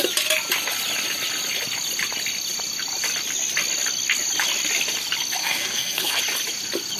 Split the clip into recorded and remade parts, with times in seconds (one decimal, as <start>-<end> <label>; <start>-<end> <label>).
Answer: 0.0-5.4 recorded; 5.4-6.2 remade; 6.2-7.0 recorded